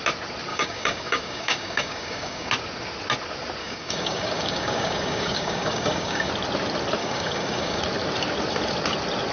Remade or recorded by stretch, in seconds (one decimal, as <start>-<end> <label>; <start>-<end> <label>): 0.0-0.5 recorded; 0.5-2.5 remade; 2.5-3.6 recorded; 3.6-6.3 remade; 6.3-7.0 recorded; 7.0-7.8 remade; 7.8-9.3 recorded